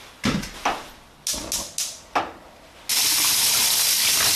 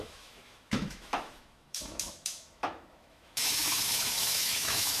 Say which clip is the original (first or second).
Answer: first